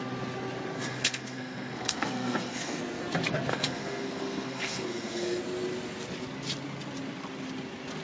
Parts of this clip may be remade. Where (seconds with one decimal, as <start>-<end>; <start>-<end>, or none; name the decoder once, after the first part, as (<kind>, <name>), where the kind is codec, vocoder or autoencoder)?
0.8-2.8 (codec, SNAC); 3.5-5.4